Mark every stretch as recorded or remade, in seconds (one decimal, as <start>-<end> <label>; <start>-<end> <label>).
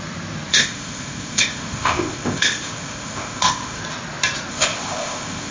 0.0-0.5 recorded; 0.5-3.8 remade; 3.8-4.5 recorded; 4.5-5.5 remade